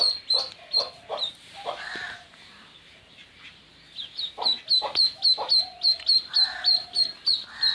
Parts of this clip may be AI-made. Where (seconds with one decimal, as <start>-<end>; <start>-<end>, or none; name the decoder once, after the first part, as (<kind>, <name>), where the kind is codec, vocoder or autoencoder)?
1.1-3.7 (vocoder, BigVGAN v2); 6.7-7.3